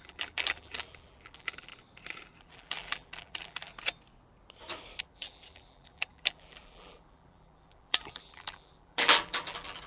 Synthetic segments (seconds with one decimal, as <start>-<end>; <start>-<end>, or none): 0.0-1.7; 2.4-3.7; 5.0-9.9

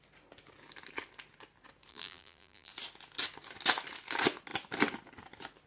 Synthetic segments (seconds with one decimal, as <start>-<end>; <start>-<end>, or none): 1.9-2.7

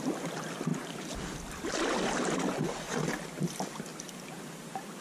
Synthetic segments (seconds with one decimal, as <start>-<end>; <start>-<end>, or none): 0.7-2.3

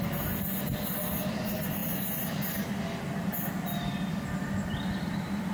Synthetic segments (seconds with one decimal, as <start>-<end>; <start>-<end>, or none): none

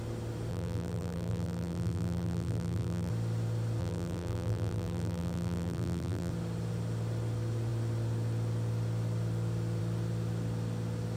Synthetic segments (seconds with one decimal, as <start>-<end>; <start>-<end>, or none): 0.5-3.1; 3.8-6.3